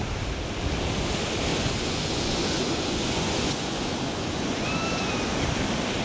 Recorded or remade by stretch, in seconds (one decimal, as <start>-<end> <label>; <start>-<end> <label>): 0.0-1.5 recorded; 1.5-5.1 remade; 5.1-6.0 recorded